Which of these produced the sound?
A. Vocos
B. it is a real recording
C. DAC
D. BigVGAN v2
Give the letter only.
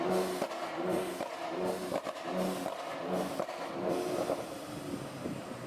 B